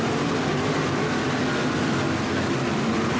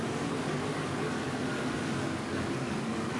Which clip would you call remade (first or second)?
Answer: second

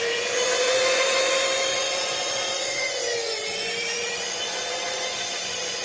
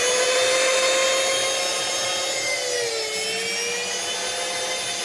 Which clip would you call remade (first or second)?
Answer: first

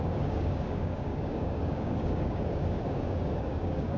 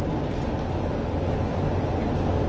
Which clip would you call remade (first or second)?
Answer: first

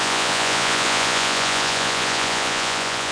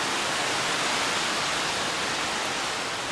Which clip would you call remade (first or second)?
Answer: first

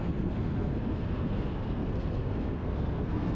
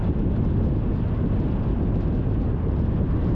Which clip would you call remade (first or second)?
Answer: first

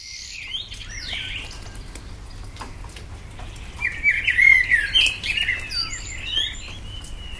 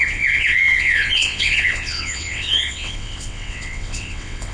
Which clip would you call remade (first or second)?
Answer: second